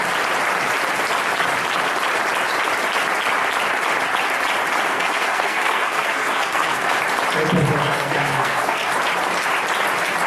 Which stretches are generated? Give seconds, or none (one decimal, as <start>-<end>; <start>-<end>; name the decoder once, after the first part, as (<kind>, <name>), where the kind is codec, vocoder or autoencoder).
4.9-7.0 (codec, SNAC); 7.8-8.9